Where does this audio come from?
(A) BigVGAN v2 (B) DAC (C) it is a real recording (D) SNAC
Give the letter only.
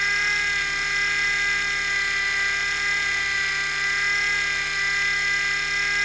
C